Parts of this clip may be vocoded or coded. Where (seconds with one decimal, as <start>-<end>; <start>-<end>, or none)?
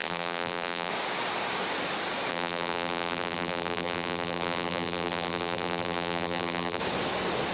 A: 0.0-0.9; 2.3-6.8